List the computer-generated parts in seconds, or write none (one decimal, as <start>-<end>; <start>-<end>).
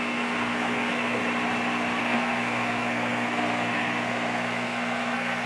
0.0-1.2; 2.0-5.5